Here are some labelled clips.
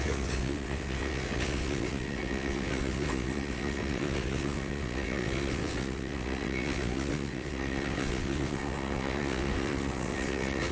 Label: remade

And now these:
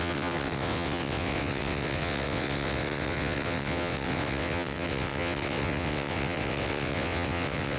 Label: remade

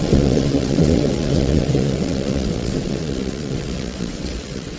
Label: remade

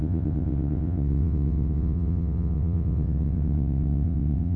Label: remade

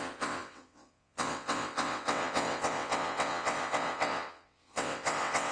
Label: remade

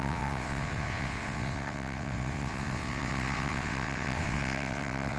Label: remade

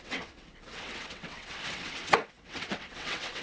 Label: remade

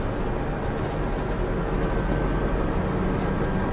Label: recorded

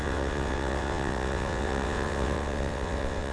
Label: remade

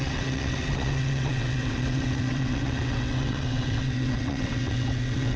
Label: remade